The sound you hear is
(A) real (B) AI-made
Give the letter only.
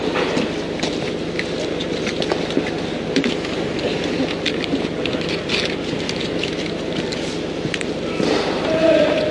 A